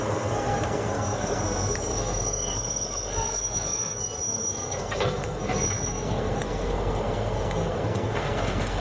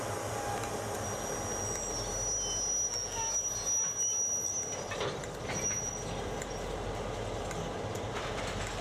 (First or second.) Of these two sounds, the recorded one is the second